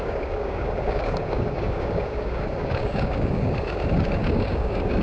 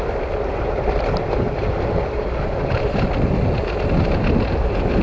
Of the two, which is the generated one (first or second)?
first